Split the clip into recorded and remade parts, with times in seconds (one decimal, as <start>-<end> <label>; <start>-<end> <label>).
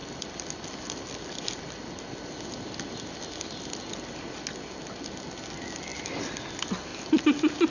0.0-1.9 remade; 1.9-5.9 recorded; 5.9-6.5 remade; 6.5-6.9 recorded; 6.9-7.7 remade